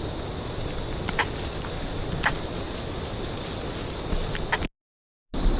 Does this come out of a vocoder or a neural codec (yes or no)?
no